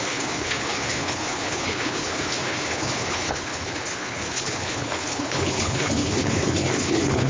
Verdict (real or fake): fake